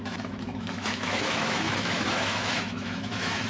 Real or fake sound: fake